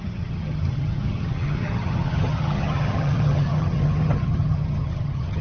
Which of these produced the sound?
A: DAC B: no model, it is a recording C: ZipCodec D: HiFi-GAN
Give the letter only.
D